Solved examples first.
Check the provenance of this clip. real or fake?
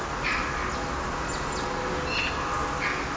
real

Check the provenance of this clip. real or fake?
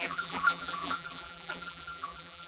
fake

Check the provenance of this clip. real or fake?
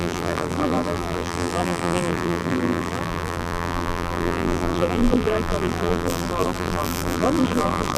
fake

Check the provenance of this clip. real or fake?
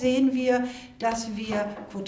real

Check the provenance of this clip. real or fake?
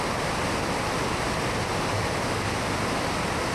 real